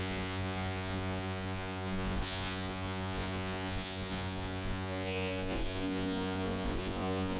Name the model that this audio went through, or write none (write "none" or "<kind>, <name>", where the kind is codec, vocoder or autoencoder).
vocoder, Vocos